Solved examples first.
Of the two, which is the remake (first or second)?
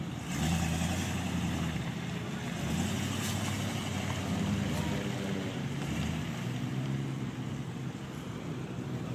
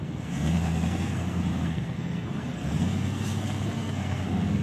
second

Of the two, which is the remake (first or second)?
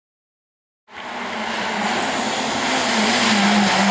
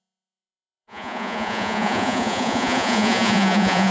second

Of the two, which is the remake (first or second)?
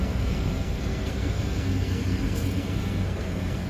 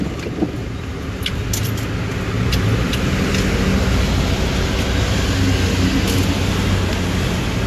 first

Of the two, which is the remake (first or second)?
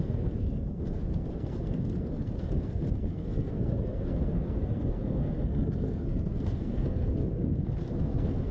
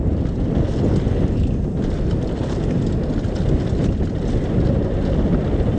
first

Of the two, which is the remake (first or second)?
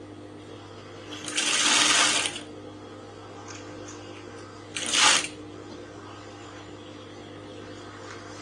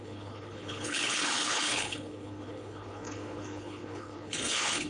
second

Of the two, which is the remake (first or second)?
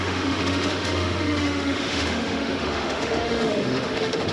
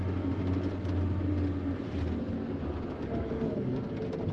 first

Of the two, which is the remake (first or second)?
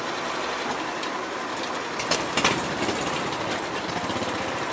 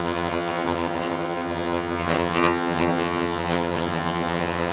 second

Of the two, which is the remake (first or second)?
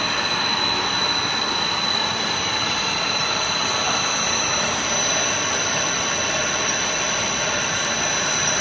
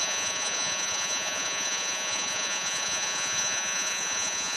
second